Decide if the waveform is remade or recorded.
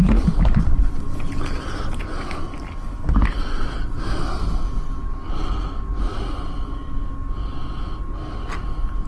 recorded